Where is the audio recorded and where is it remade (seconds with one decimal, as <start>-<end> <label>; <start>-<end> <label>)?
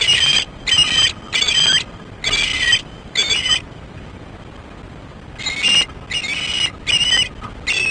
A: 0.0-1.0 remade; 1.0-2.5 recorded; 2.5-5.4 remade; 5.4-7.9 recorded